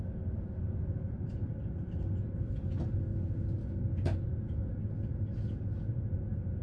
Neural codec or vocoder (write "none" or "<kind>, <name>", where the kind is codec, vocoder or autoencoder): none